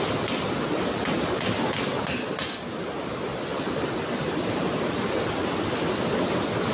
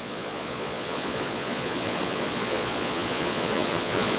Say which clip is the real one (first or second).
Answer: first